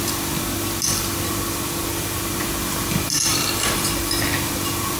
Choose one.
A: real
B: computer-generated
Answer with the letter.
B